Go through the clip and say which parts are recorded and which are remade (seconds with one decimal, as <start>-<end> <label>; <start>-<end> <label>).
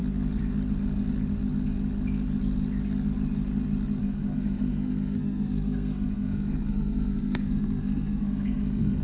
0.0-4.0 recorded; 4.0-9.0 remade